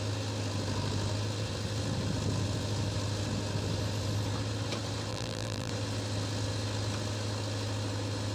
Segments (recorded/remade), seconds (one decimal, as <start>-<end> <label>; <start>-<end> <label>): 0.0-5.1 recorded; 5.1-5.7 remade; 5.7-8.3 recorded